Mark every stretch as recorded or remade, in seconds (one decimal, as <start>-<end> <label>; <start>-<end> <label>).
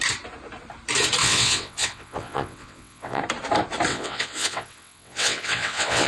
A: 0.0-1.2 recorded; 1.2-3.2 remade; 3.2-3.9 recorded; 3.9-6.1 remade